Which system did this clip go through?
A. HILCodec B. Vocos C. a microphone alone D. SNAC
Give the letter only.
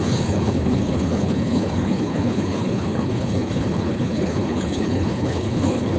A